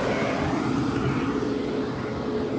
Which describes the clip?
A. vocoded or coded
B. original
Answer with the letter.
B